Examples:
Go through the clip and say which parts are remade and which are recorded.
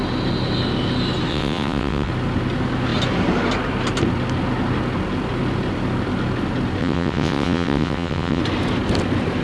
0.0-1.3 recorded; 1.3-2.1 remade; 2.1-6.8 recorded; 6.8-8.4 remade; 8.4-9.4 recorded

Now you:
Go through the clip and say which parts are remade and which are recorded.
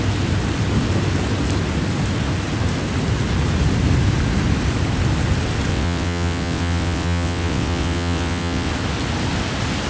0.0-5.7 recorded; 5.7-8.7 remade; 8.7-9.9 recorded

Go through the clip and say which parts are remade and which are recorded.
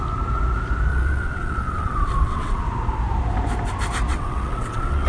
0.0-0.9 recorded; 0.9-2.6 remade; 2.6-4.1 recorded; 4.1-5.1 remade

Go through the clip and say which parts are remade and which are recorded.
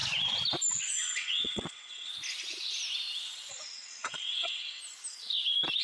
0.0-0.7 recorded; 0.7-2.1 remade; 2.1-3.5 recorded; 3.5-4.8 remade; 4.8-5.8 recorded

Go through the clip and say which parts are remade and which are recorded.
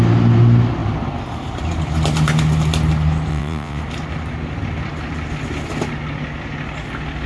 0.0-3.3 recorded; 3.3-3.8 remade; 3.8-7.3 recorded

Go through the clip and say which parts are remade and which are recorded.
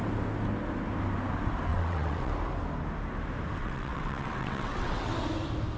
0.0-1.7 recorded; 1.7-2.3 remade; 2.3-3.6 recorded; 3.6-5.1 remade; 5.1-5.8 recorded